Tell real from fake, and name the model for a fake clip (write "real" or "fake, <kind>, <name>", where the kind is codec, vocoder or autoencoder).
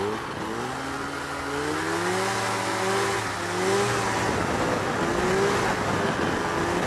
real